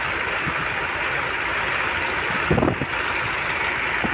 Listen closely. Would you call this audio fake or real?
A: real